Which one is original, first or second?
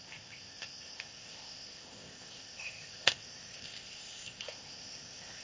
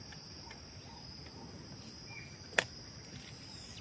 second